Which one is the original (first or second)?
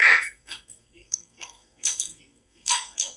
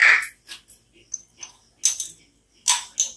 second